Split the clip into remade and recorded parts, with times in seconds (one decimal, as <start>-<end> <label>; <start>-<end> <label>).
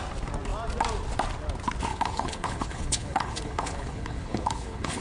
0.0-1.9 recorded; 1.9-5.0 remade